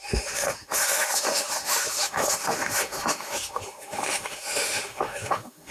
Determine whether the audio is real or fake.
fake